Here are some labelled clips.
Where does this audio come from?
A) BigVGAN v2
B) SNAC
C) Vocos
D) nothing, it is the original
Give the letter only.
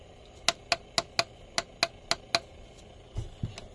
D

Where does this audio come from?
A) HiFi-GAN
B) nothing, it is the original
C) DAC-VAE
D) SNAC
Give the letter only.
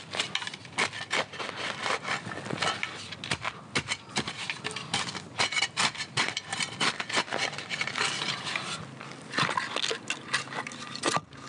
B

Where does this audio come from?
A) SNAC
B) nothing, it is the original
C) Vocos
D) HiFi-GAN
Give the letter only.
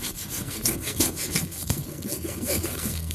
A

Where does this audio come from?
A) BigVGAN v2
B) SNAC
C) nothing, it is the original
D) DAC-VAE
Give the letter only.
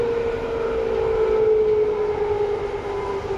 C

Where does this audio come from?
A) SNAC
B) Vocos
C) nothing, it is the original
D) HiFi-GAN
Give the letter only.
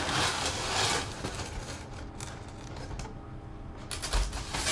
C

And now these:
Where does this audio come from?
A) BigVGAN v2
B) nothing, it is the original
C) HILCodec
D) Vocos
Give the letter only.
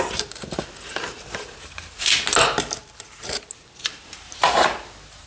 A